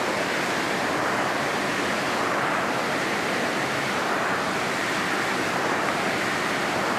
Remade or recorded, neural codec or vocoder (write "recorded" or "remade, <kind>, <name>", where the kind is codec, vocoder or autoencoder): recorded